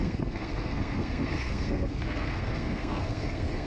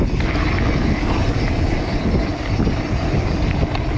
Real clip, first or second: second